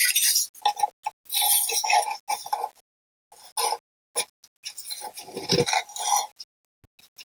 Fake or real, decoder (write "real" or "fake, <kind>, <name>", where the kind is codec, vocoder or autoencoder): real